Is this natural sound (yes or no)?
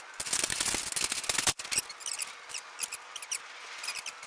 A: yes